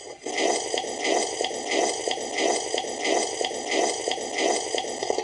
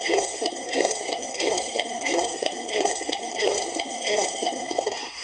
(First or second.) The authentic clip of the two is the first